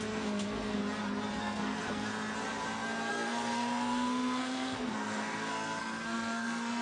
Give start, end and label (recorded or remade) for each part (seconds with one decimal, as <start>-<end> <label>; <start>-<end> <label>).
0.0-0.8 remade; 0.8-1.4 recorded; 1.4-2.1 remade; 2.1-3.1 recorded; 3.1-6.8 remade